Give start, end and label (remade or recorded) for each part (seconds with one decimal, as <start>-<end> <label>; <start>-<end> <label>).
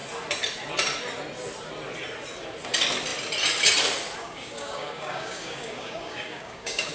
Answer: 0.0-4.2 recorded; 4.2-6.9 remade